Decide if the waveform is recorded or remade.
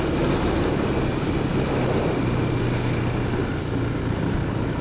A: recorded